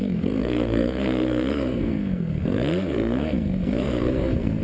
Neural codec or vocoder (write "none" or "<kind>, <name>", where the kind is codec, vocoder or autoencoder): codec, SNAC